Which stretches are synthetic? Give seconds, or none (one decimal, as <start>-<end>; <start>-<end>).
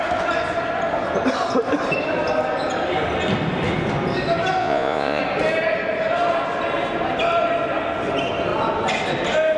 4.6-5.2